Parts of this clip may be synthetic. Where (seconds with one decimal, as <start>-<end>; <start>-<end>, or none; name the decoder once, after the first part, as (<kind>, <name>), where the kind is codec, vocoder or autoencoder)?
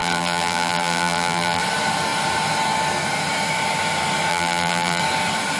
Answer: 0.0-1.6 (vocoder, BigVGAN v2); 4.3-5.0